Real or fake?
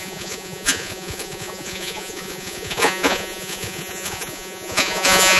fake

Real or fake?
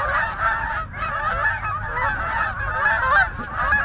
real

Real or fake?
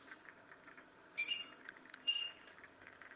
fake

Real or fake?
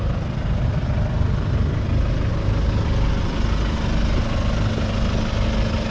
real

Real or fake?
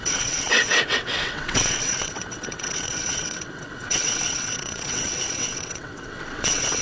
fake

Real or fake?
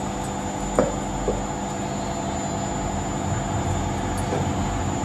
real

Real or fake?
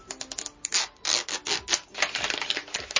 real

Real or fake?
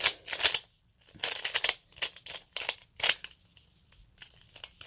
real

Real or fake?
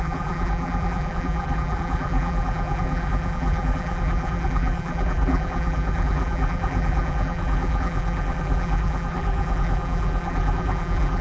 fake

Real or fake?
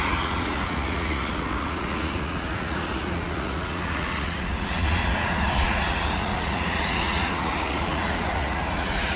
fake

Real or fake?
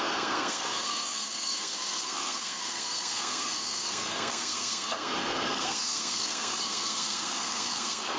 fake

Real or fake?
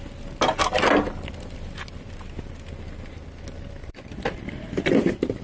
real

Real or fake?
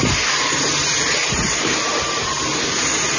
real